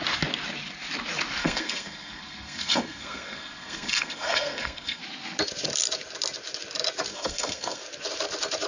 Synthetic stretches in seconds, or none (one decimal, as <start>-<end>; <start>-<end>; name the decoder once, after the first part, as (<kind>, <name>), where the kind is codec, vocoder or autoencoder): 1.4-5.0 (codec, SNAC); 7.1-7.8